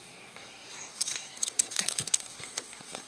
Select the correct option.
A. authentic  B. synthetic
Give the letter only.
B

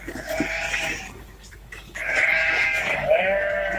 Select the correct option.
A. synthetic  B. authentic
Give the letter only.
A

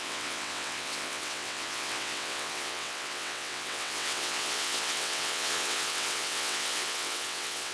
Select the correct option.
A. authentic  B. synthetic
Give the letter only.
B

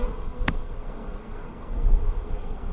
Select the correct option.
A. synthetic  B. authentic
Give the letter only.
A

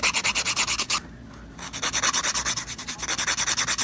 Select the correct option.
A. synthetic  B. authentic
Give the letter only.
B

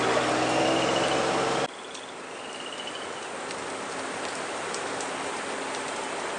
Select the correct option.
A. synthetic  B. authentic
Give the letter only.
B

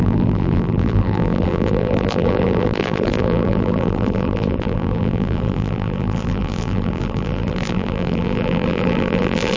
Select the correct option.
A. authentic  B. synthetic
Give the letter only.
B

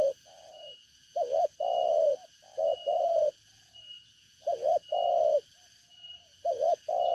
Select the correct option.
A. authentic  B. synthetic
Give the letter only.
B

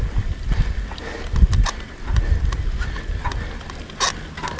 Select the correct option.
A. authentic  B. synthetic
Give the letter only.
A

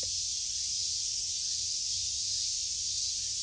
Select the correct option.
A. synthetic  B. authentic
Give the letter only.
B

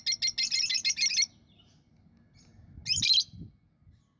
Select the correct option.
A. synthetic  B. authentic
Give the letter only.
B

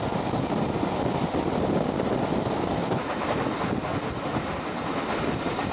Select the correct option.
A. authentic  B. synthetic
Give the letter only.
A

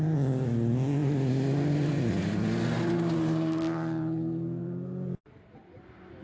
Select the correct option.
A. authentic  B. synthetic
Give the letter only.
A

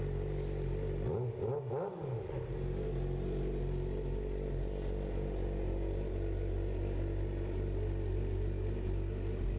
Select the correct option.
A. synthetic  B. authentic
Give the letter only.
B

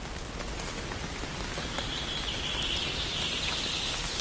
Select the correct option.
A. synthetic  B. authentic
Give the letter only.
B